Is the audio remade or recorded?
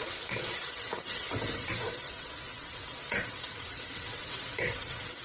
remade